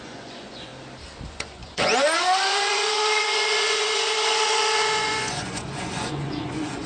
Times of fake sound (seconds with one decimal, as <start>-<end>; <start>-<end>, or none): 0.0-0.7; 1.3-6.9